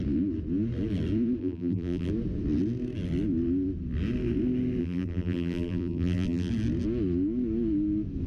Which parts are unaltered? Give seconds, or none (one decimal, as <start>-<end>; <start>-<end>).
0.0-1.4; 2.1-4.8; 6.5-8.3